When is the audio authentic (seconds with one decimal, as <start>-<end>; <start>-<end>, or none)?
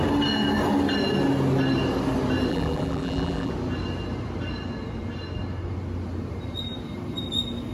0.0-2.5; 3.5-7.7